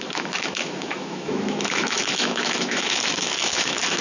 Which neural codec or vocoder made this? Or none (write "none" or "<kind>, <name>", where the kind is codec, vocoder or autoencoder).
autoencoder, DAC-VAE